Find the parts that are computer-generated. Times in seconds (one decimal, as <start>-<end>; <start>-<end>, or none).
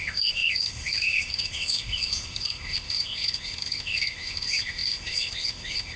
0.0-6.0